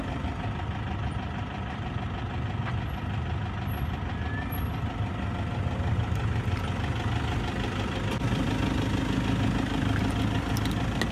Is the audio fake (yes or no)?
no